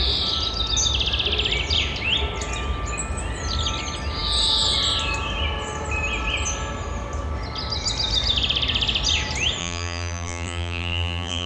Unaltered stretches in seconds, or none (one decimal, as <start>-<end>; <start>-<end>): 0.0-9.6